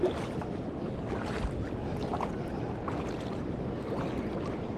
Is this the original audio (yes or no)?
yes